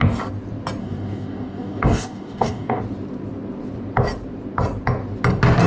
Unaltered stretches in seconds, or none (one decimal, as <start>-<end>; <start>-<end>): 0.0-0.8; 2.8-5.7